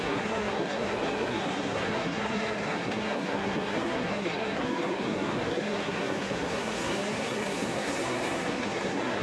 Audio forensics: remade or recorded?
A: remade